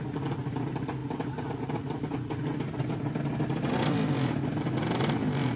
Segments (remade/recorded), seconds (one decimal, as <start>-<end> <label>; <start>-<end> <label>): 0.0-5.6 recorded